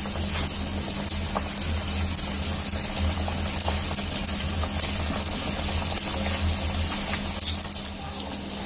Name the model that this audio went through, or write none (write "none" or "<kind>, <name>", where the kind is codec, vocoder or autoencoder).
none